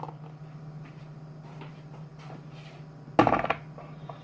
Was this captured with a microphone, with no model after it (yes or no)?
yes